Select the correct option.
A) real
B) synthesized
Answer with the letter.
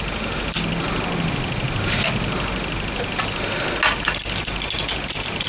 A